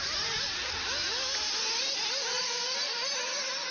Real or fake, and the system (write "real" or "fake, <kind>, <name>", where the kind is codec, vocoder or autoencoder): real